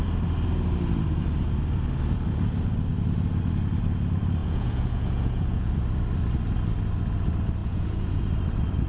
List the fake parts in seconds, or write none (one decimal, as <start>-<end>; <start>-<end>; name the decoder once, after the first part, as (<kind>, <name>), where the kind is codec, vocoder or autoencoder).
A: 4.4-5.7 (vocoder, Vocos); 7.6-8.2